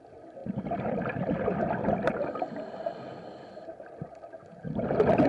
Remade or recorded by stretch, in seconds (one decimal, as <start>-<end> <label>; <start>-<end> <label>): 0.0-0.4 recorded; 0.4-1.7 remade; 1.7-5.3 recorded